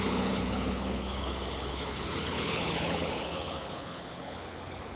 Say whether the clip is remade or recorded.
remade